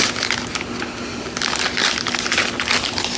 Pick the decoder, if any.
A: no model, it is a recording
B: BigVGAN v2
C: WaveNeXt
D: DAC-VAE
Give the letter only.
A